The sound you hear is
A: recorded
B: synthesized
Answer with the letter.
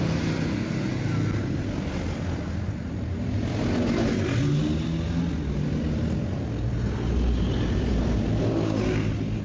A